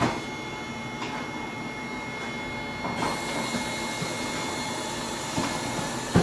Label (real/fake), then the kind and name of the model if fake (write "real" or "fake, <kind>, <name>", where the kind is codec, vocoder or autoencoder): real